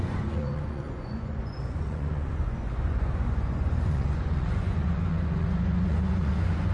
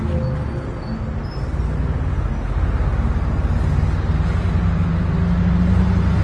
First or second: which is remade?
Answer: first